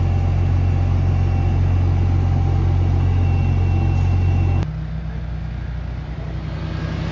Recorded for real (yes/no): yes